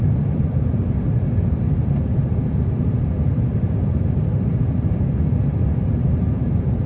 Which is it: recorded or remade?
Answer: remade